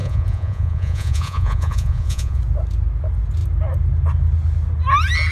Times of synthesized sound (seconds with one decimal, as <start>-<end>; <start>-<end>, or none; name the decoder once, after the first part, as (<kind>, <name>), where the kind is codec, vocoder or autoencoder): 0.0-2.4 (vocoder, Vocos)